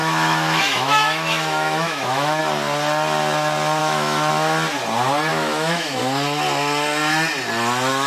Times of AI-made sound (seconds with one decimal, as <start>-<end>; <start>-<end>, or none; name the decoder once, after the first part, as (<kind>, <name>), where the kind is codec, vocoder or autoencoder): 0.0-2.4 (autoencoder, DAC-VAE); 3.8-4.3; 5.3-6.0